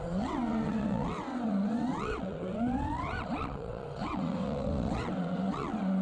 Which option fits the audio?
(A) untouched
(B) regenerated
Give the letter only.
B